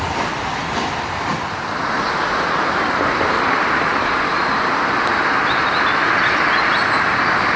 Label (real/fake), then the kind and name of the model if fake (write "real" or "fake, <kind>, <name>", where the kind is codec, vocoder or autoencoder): real